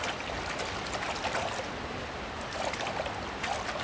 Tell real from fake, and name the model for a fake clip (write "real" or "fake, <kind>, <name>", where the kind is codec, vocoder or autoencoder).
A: real